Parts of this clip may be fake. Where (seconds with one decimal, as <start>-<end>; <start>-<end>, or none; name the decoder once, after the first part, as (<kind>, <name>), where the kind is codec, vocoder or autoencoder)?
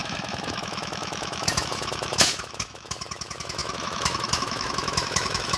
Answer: 0.0-5.6 (autoencoder, DAC-VAE)